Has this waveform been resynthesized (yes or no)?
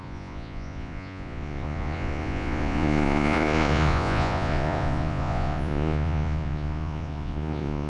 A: yes